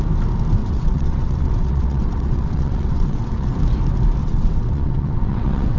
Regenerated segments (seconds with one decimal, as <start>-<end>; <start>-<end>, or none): 0.6-3.5; 4.2-5.8